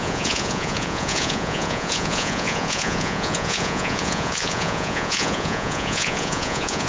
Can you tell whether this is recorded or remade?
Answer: remade